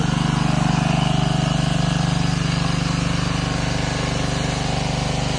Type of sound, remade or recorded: recorded